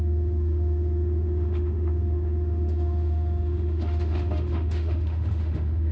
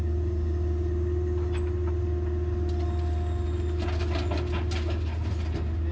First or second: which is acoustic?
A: second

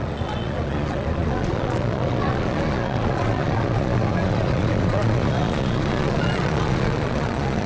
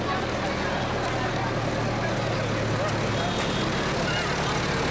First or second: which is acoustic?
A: second